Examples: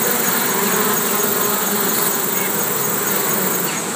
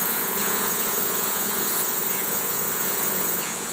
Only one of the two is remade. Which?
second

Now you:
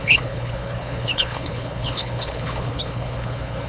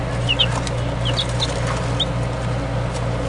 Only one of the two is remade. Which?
first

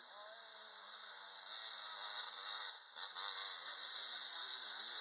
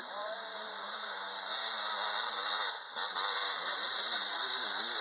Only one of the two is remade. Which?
second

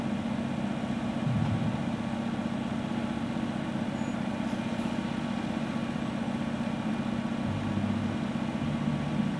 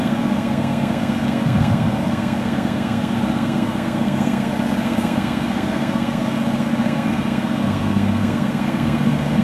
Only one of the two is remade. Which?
second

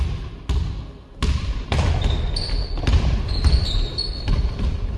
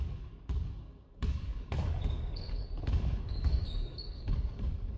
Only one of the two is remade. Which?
second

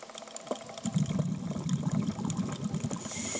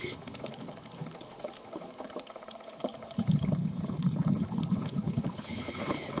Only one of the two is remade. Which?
second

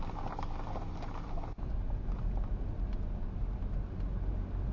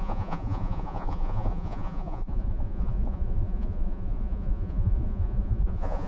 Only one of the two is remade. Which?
second